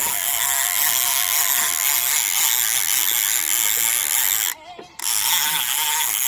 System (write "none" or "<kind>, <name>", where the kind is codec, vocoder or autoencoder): none